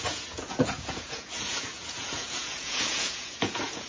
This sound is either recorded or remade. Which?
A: remade